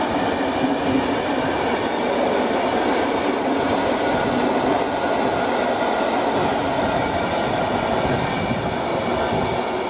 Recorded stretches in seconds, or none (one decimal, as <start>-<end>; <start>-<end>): 0.0-9.9